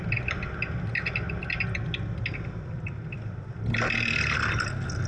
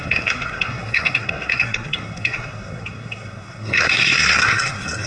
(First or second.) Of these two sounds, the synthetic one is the second